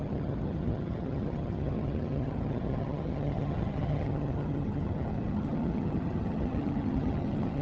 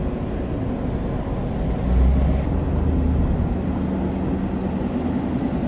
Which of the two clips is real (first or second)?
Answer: second